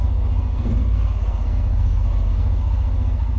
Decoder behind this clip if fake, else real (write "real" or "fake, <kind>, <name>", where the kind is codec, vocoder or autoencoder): fake, codec, SNAC